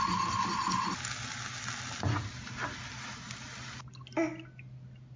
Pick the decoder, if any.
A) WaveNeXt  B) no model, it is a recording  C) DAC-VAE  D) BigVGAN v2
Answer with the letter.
B